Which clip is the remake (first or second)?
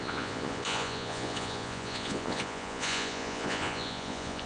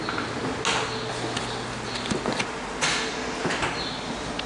first